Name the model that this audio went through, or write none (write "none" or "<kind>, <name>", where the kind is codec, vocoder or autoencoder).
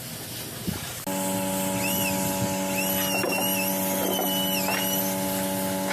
none